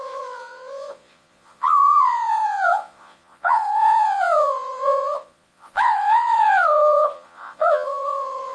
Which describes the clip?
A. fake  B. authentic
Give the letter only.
A